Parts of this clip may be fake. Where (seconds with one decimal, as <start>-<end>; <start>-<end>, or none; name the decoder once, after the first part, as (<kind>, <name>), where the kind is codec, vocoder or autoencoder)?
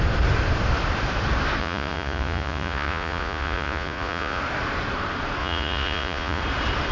1.6-4.4 (vocoder, Vocos); 5.4-6.4